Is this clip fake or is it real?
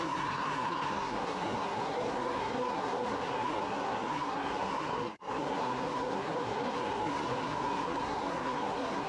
fake